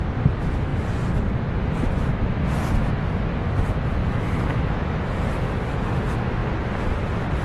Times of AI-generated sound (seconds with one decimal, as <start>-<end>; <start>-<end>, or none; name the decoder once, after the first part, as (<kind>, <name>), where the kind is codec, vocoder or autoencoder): 4.0-5.2 (autoencoder, DAC-VAE)